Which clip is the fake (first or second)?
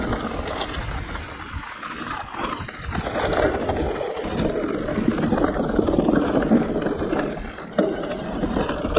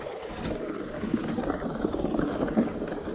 second